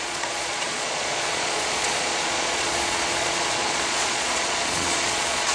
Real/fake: fake